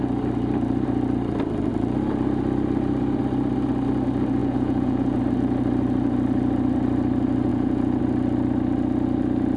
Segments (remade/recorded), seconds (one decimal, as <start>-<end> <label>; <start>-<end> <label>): 0.0-4.4 recorded; 4.4-5.2 remade; 5.2-7.5 recorded; 7.5-8.0 remade; 8.0-9.6 recorded